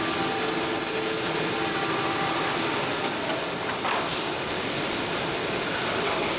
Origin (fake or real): real